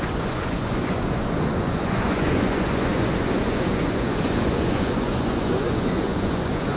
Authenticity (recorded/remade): remade